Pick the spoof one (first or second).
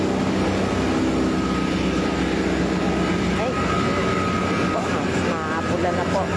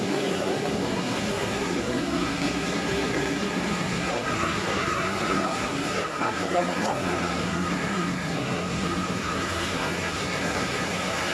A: second